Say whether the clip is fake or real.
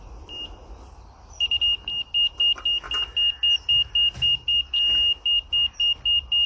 real